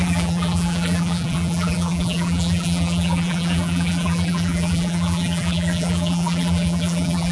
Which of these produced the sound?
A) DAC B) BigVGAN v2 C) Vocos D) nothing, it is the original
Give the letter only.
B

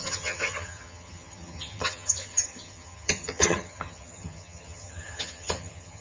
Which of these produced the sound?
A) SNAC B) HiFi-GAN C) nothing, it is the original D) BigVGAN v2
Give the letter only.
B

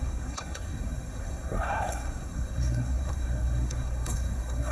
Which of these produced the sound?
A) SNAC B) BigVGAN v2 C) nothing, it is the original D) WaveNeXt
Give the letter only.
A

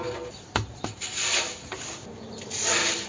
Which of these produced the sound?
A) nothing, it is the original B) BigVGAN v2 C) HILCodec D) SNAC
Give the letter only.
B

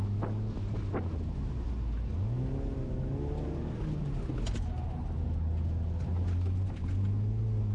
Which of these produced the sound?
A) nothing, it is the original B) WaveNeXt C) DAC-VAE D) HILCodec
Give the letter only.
A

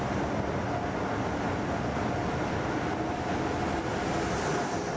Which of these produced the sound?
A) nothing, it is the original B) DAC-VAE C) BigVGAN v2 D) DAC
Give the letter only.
A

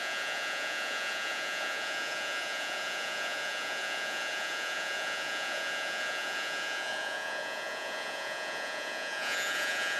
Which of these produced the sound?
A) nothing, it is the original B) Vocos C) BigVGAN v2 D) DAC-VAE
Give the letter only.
B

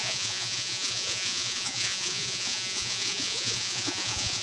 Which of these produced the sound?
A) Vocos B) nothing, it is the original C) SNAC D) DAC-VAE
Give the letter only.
A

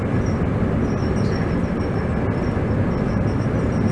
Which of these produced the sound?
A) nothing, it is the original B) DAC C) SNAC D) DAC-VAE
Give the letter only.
A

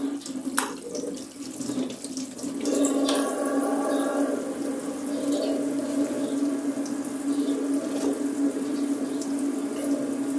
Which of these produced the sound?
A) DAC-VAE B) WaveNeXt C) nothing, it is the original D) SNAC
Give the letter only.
C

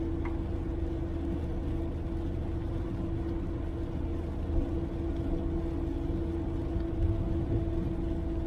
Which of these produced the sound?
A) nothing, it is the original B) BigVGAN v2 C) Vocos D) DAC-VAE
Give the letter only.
A